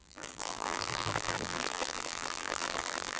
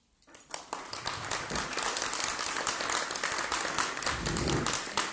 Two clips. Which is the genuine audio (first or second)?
second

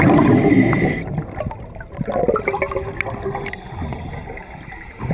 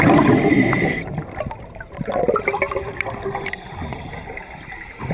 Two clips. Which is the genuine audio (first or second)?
first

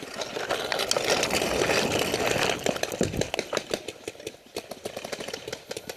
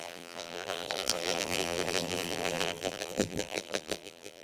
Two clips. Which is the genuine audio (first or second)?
first